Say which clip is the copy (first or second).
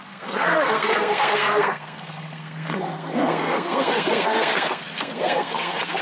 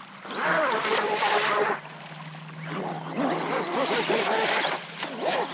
first